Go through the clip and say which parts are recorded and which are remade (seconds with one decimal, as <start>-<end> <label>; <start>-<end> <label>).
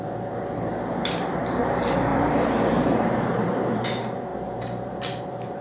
0.0-2.1 recorded; 2.1-3.8 remade; 3.8-4.3 recorded; 4.3-5.6 remade